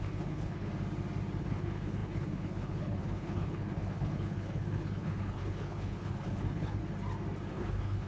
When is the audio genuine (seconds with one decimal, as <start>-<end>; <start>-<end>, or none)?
0.7-1.4; 6.8-7.5